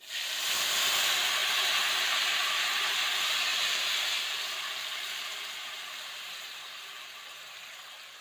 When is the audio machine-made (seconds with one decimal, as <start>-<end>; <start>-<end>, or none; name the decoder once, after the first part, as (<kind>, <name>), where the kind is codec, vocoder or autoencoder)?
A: 3.5-4.4 (vocoder, BigVGAN v2); 5.6-7.6